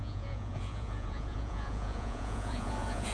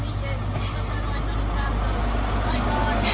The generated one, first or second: first